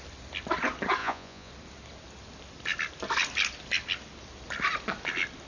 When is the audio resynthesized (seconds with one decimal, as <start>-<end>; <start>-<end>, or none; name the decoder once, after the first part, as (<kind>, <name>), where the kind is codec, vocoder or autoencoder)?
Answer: 1.0-1.5 (vocoder, Vocos)